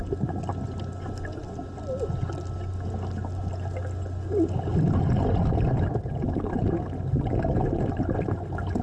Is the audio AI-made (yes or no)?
no